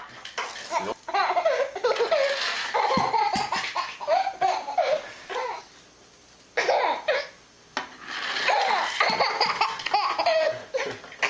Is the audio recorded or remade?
recorded